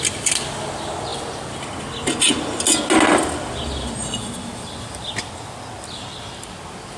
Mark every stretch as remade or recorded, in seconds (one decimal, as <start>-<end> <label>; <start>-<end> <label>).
0.0-7.0 recorded